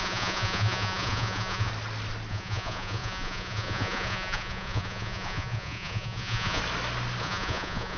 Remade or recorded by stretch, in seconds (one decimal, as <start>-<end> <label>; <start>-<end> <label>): 0.0-1.7 remade; 1.7-2.3 recorded; 2.3-6.6 remade; 6.6-7.2 recorded; 7.2-8.0 remade